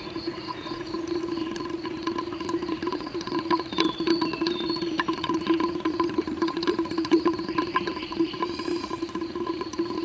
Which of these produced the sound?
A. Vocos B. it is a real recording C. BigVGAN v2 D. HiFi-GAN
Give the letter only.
A